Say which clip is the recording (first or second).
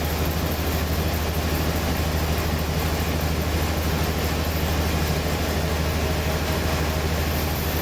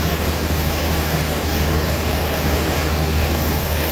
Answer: first